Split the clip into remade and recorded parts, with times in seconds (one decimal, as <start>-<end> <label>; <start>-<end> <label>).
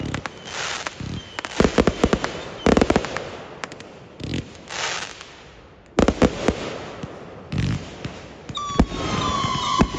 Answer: 0.0-10.0 recorded